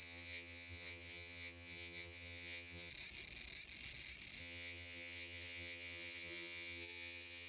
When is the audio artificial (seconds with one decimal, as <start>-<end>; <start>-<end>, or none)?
0.0-2.9; 4.4-7.5